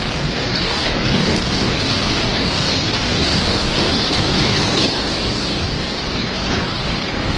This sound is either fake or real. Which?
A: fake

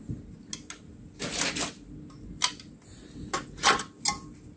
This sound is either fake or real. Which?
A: real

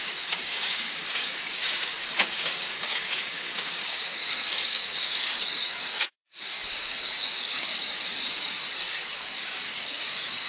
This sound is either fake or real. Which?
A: fake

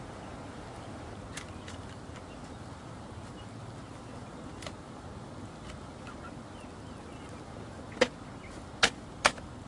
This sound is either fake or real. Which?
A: real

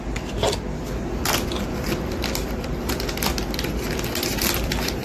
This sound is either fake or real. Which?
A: real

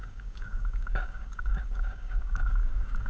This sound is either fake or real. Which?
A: fake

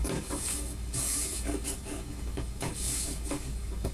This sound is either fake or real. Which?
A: fake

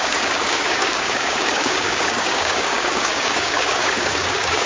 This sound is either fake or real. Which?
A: fake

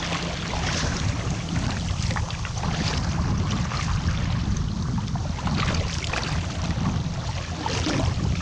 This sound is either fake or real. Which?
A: real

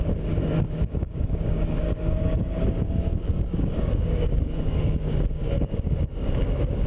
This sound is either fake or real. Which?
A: fake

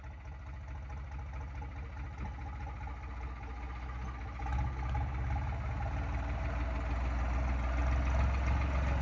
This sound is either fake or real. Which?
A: real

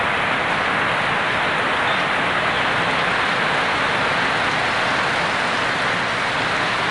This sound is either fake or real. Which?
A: real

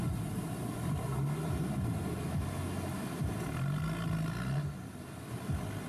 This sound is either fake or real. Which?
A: real